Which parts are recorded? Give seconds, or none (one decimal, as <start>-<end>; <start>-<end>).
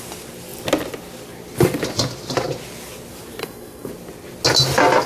0.0-3.4; 3.9-5.1